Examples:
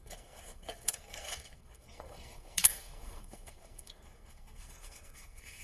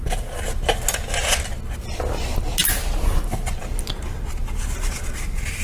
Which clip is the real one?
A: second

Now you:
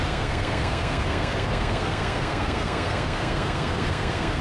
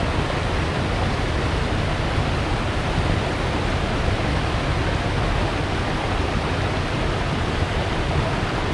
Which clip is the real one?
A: second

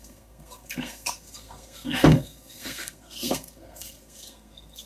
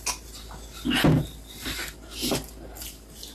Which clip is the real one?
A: second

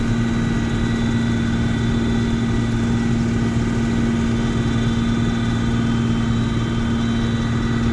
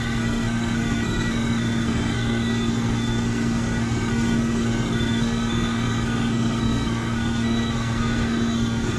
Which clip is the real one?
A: first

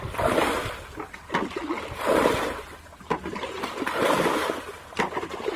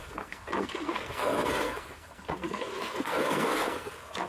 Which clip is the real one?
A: first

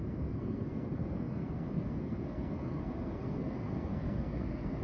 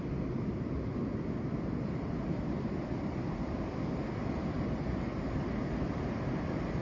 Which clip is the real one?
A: second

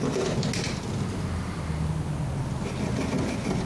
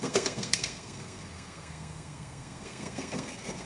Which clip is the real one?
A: first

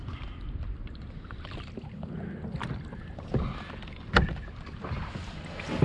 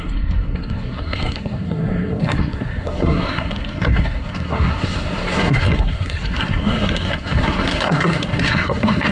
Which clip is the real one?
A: first